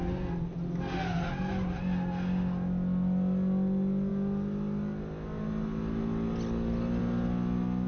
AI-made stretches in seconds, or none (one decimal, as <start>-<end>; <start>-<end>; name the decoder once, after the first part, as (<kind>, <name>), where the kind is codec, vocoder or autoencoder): none